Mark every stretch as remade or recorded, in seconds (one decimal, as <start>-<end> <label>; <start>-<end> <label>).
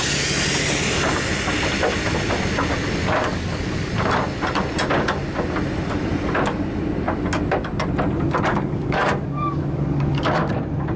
0.0-3.3 recorded; 3.3-3.9 remade; 3.9-8.5 recorded; 8.5-10.5 remade; 10.5-11.0 recorded